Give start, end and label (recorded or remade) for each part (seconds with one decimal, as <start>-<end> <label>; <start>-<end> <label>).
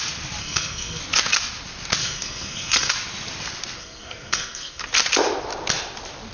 0.0-0.4 recorded; 0.4-1.0 remade; 1.0-2.0 recorded; 2.0-2.9 remade; 2.9-3.8 recorded; 3.8-4.8 remade; 4.8-6.3 recorded